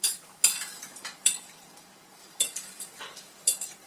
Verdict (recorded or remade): remade